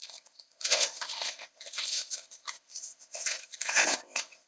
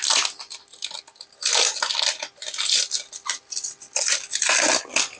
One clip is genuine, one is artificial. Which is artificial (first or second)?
first